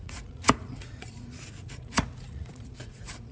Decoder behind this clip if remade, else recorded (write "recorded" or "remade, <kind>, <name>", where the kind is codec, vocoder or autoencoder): remade, vocoder, Vocos